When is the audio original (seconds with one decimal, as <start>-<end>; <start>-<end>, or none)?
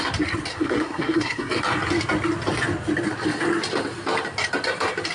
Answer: 0.0-0.5; 1.6-5.1